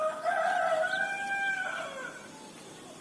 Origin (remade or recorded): recorded